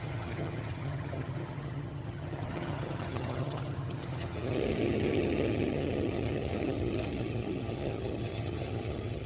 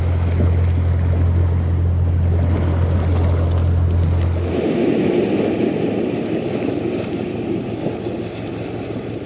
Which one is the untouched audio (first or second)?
second